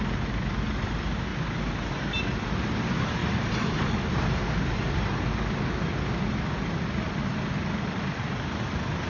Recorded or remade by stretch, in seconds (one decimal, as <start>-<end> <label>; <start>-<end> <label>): 0.0-9.1 recorded

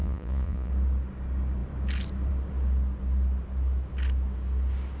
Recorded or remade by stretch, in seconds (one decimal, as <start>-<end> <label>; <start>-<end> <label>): 0.0-0.7 remade; 0.7-5.0 recorded

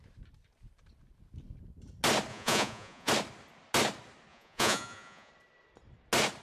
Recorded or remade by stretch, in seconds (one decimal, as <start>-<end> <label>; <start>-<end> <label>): 0.0-2.3 recorded; 2.3-3.1 remade; 3.1-4.3 recorded; 4.3-5.3 remade; 5.3-6.4 recorded

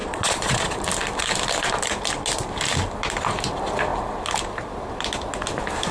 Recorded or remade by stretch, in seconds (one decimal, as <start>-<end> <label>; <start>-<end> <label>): 0.0-0.8 remade; 0.8-5.9 recorded